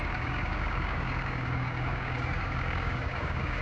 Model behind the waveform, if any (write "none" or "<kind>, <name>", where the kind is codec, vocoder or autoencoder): codec, DAC